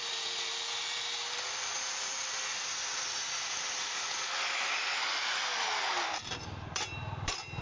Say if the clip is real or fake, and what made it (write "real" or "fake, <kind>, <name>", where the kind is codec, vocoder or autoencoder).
fake, vocoder, BigVGAN v2